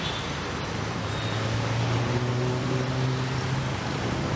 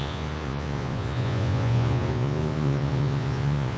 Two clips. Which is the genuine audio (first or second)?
first